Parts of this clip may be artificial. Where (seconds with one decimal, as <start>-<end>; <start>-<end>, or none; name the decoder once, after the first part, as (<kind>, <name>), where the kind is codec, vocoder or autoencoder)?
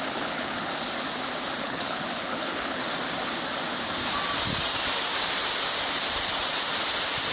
0.0-0.7 (codec, HILCodec); 1.6-2.8